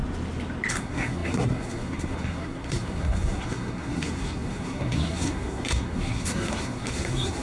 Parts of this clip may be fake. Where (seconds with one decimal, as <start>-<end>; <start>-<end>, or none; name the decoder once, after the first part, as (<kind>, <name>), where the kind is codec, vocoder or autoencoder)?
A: 0.7-7.4 (codec, SNAC)